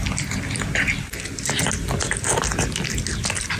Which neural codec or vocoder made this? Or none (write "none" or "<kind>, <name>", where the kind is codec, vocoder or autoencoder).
none